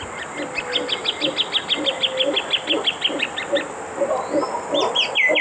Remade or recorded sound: recorded